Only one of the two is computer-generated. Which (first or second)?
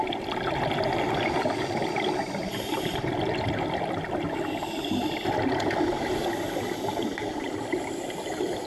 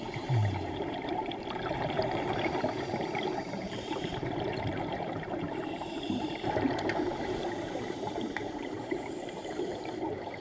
second